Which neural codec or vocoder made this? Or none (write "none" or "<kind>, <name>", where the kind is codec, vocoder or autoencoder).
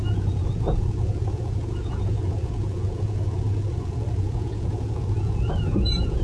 vocoder, Vocos